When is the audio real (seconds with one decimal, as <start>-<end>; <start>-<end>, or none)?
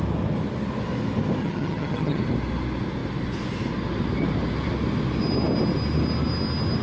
0.0-1.4; 2.2-6.8